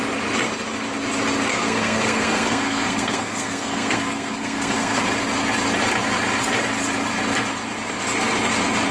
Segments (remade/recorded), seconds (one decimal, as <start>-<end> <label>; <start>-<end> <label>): 0.0-1.5 recorded; 1.5-5.0 remade; 5.0-8.9 recorded